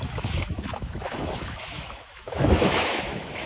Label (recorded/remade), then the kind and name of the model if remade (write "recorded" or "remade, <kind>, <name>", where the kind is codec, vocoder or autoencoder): remade, autoencoder, DAC-VAE